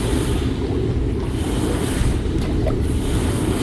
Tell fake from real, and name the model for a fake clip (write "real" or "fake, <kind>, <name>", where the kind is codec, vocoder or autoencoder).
real